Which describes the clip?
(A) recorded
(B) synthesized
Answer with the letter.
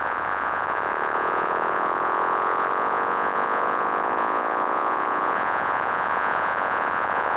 B